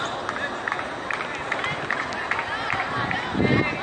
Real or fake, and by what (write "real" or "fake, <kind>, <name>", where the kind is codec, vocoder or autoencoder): real